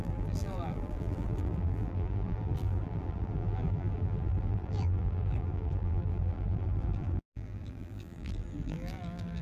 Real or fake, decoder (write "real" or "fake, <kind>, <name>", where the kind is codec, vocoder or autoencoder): fake, vocoder, BigVGAN v2